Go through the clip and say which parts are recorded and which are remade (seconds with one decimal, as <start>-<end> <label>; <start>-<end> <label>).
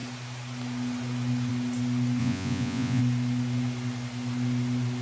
0.0-2.2 recorded; 2.2-3.0 remade; 3.0-5.0 recorded